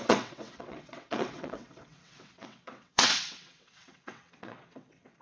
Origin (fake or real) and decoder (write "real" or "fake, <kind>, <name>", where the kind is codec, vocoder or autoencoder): fake, vocoder, WaveNeXt